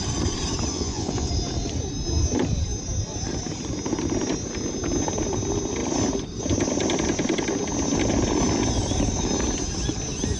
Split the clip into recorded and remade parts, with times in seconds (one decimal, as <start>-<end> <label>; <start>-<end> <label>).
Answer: 0.0-0.7 recorded; 0.7-1.3 remade; 1.3-10.4 recorded